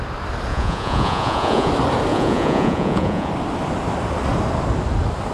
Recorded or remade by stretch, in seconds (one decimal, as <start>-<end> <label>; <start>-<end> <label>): 0.0-0.5 recorded; 0.5-1.7 remade; 1.7-2.1 recorded; 2.1-3.3 remade; 3.3-5.3 recorded